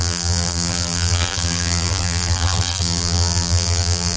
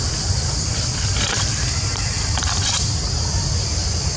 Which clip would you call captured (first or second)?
second